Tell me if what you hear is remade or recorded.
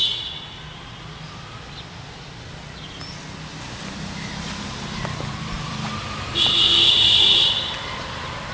recorded